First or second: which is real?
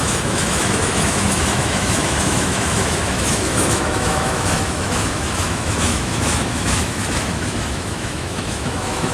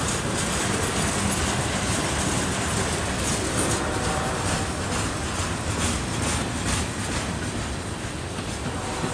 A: second